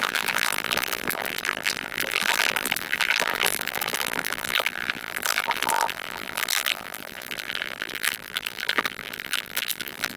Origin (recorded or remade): remade